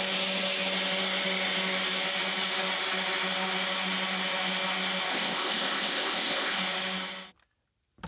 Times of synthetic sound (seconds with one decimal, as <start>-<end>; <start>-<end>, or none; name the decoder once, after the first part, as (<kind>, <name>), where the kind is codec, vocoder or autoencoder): 5.1-6.6 (codec, ZipCodec)